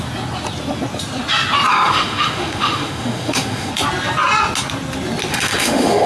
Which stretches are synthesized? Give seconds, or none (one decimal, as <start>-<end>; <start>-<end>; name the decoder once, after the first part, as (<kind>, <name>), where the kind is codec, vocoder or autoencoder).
1.7-3.7 (autoencoder, DAC-VAE); 5.3-6.1